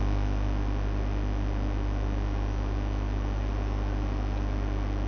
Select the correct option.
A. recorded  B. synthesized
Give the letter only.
A